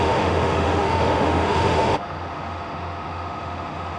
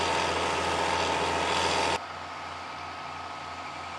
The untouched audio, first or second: second